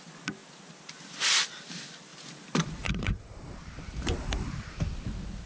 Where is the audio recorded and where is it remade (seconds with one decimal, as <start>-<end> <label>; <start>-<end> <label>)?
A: 0.0-2.1 recorded; 2.1-4.1 remade; 4.1-5.5 recorded